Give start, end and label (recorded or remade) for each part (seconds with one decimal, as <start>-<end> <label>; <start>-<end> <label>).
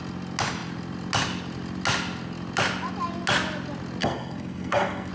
0.0-4.0 recorded; 4.0-5.1 remade